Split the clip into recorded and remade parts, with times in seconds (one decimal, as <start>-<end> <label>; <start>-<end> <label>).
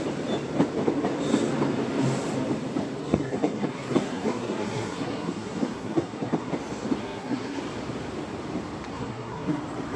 0.0-3.0 recorded; 3.0-6.5 remade; 6.5-7.0 recorded; 7.0-7.6 remade; 7.6-8.9 recorded; 8.9-9.6 remade; 9.6-10.0 recorded